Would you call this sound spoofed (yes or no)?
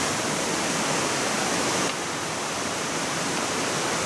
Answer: no